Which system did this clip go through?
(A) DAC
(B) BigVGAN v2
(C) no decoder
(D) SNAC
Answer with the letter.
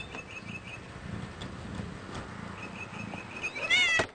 C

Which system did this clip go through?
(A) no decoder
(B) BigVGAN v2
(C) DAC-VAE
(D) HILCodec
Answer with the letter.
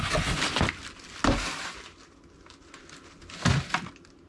A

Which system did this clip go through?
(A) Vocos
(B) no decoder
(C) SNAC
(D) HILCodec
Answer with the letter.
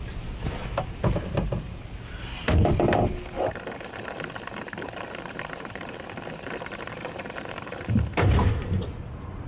B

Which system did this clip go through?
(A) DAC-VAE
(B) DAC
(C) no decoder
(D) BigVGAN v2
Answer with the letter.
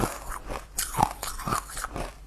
C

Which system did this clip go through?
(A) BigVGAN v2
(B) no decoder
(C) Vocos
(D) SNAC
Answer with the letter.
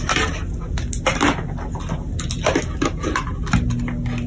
B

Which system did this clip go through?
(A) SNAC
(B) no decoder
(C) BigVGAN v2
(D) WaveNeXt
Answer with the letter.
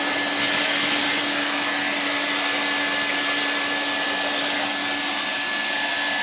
B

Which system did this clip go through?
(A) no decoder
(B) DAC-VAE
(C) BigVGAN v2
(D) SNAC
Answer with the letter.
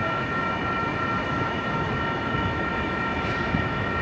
B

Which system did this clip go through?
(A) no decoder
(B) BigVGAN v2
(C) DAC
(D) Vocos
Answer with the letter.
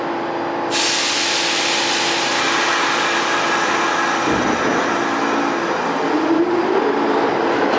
A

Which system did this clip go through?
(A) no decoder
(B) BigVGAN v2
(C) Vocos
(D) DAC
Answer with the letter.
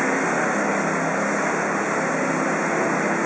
A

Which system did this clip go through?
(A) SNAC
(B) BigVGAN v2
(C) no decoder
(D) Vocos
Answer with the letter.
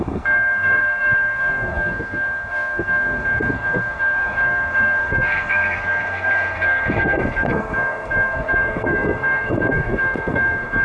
A